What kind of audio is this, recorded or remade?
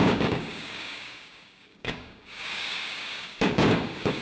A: remade